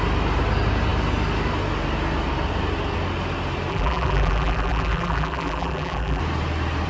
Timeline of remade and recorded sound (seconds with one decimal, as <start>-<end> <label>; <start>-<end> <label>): 0.0-3.7 recorded; 3.7-6.2 remade; 6.2-6.9 recorded